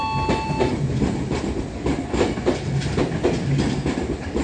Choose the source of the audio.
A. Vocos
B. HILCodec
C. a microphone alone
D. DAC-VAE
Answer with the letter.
C